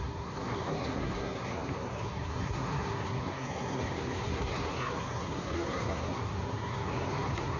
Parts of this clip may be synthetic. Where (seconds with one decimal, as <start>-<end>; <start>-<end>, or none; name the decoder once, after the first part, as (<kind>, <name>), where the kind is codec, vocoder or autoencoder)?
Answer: 0.0-7.6 (codec, SNAC)